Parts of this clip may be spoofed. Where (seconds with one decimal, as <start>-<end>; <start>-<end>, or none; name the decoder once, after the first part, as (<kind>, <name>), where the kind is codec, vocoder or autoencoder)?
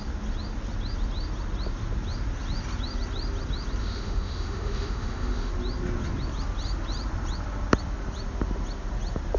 3.8-5.5 (autoencoder, DAC-VAE)